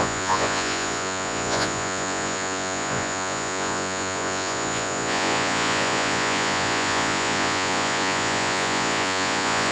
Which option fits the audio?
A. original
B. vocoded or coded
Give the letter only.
B